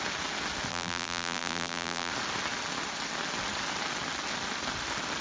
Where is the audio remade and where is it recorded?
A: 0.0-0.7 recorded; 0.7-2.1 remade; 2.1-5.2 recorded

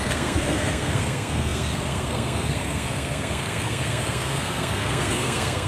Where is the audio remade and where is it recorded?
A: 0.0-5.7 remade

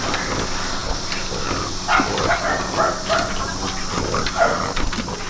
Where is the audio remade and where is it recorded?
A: 0.0-5.3 recorded

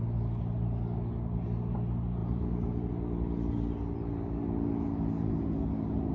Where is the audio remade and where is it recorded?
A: 0.0-2.2 recorded; 2.2-2.9 remade; 2.9-6.1 recorded